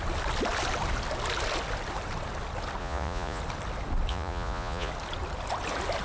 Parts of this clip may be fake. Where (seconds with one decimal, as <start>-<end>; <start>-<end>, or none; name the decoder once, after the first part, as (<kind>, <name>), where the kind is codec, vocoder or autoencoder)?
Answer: 2.8-3.4 (vocoder, Vocos); 4.1-4.9